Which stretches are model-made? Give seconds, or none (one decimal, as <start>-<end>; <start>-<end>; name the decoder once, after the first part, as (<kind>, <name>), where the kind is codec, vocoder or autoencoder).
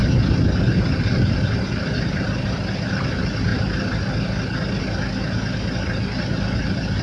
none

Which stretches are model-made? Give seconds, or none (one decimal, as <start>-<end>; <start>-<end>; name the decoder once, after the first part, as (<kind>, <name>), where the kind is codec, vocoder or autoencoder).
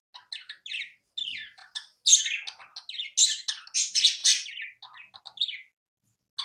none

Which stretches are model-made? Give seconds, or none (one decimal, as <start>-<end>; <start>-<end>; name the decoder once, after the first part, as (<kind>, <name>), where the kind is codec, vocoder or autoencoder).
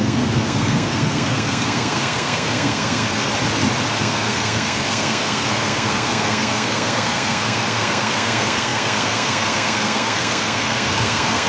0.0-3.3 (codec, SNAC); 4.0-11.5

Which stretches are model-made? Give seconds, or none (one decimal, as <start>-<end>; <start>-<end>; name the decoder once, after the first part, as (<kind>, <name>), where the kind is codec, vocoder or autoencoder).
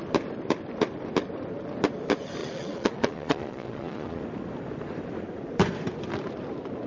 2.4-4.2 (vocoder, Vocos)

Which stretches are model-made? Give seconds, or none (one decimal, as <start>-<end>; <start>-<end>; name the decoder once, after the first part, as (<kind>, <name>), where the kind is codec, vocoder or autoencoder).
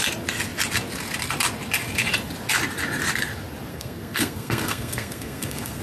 3.7-5.8 (codec, SNAC)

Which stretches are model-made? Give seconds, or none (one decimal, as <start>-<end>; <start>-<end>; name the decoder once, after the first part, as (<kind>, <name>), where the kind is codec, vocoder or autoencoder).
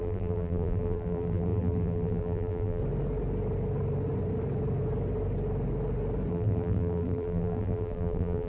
0.0-2.8 (vocoder, BigVGAN v2); 6.3-8.5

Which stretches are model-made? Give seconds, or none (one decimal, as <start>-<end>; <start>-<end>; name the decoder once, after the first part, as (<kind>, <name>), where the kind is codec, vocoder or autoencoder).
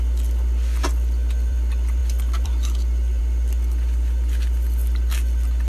none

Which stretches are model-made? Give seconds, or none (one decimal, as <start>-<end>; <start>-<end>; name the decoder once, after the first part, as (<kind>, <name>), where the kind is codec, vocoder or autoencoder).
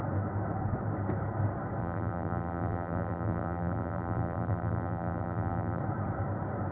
1.8-5.8 (vocoder, BigVGAN v2)